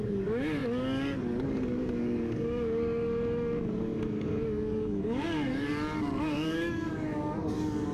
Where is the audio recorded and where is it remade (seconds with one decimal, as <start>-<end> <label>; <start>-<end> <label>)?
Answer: 0.0-7.9 remade